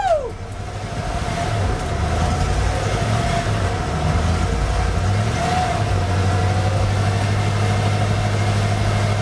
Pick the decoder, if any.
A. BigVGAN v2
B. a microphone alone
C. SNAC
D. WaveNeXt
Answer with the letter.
B